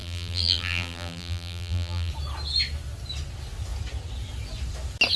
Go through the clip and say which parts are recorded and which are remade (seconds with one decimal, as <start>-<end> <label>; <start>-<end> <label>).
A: 0.0-2.1 remade; 2.1-5.2 recorded